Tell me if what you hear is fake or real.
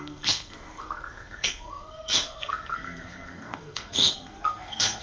fake